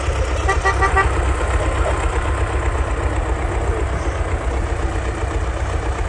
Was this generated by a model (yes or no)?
no